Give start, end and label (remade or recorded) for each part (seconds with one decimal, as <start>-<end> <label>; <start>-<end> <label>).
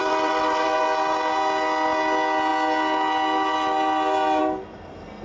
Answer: 0.0-0.8 remade; 0.8-5.2 recorded